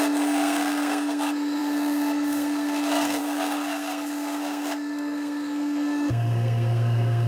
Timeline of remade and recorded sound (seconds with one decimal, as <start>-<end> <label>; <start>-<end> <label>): 0.0-7.3 remade